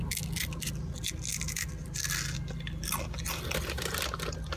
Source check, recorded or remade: recorded